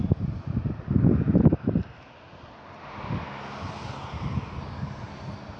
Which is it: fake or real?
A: real